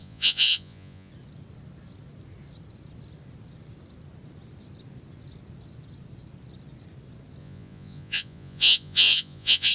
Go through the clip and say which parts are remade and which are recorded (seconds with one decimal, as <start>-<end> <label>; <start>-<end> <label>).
0.0-1.1 remade; 1.1-7.4 recorded; 7.4-9.7 remade

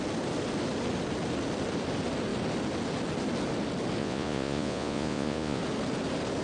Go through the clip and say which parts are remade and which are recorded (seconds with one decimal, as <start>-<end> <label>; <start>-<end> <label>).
0.0-4.0 recorded; 4.0-5.6 remade; 5.6-6.4 recorded

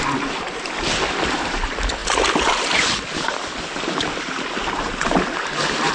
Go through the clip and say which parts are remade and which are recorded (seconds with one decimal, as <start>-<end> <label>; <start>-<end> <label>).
0.0-5.9 recorded

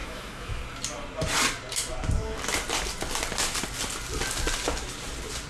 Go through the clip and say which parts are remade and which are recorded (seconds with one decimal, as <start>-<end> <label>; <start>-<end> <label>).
0.0-0.6 remade; 0.6-5.5 recorded

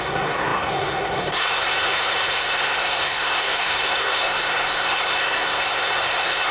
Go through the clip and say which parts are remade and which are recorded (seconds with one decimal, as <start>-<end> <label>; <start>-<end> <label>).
0.0-6.5 remade

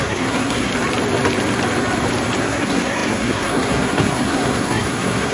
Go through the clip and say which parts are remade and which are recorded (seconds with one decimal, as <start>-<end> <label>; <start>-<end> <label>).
0.0-0.7 remade; 0.7-2.4 recorded; 2.4-5.3 remade

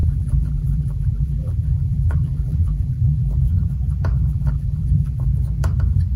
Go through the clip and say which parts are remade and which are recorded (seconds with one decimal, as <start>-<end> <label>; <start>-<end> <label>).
0.0-3.5 remade; 3.5-4.3 recorded; 4.3-5.3 remade; 5.3-6.2 recorded

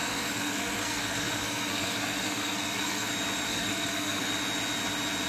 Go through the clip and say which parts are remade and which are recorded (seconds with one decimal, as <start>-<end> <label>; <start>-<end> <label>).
0.0-3.1 remade; 3.1-3.5 recorded; 3.5-4.3 remade; 4.3-5.3 recorded